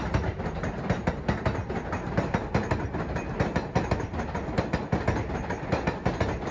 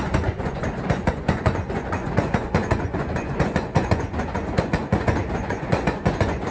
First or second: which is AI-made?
second